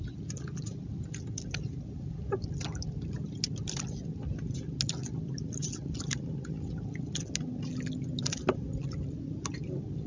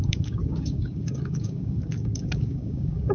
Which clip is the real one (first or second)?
first